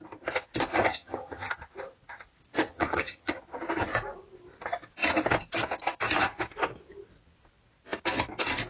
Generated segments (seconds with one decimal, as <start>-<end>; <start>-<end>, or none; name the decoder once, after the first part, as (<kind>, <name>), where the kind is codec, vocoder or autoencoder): 0.9-1.5 (vocoder, HiFi-GAN); 2.7-3.4

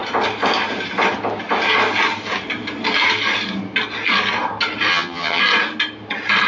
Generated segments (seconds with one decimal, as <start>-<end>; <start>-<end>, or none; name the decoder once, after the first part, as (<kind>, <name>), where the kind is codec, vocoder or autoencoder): 4.9-5.4 (vocoder, HiFi-GAN)

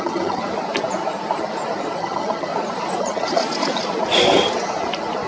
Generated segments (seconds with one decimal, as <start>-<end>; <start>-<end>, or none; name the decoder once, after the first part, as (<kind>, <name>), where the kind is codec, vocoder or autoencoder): 0.0-0.4 (vocoder, HiFi-GAN); 2.0-2.5; 3.0-3.4

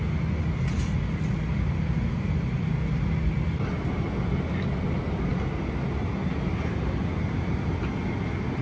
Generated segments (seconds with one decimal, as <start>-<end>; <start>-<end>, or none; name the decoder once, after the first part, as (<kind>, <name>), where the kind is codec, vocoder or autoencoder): none

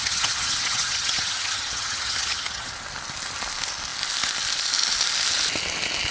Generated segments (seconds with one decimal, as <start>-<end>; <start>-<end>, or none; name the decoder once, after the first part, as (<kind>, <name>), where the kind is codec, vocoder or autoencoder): 0.0-2.7 (vocoder, HiFi-GAN)

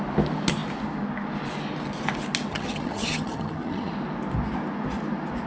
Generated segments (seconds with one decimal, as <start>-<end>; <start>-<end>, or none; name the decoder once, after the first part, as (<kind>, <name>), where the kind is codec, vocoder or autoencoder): 2.5-3.9 (vocoder, HiFi-GAN)

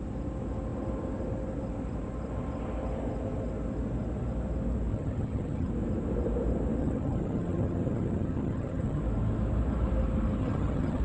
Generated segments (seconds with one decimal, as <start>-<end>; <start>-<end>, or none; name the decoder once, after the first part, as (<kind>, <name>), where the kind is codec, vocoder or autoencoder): 4.9-5.7 (vocoder, HiFi-GAN); 6.8-9.0; 10.4-11.0

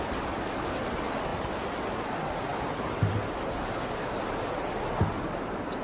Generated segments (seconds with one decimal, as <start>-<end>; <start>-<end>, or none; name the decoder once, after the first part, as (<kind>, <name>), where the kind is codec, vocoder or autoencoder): none